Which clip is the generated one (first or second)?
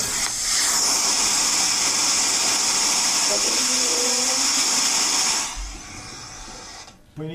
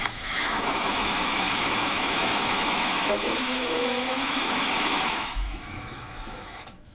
second